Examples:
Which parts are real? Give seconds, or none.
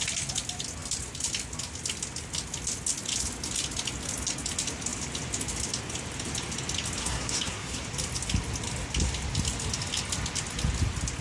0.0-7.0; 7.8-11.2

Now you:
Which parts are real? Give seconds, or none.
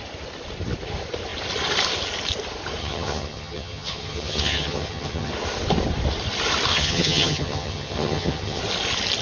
0.0-2.8; 5.3-6.7; 8.6-9.2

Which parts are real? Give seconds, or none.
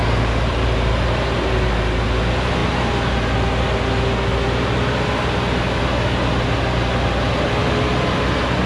0.9-8.7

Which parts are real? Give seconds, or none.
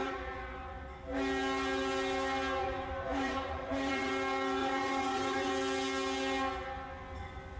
0.8-2.6; 4.1-4.6; 5.5-7.6